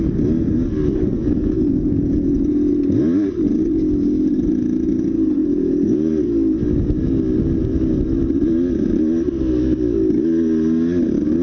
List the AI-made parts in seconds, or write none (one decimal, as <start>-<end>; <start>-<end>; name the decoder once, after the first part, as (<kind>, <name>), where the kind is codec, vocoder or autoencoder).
1.1-2.7 (vocoder, Vocos); 5.4-6.1